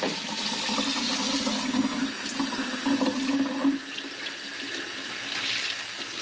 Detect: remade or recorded recorded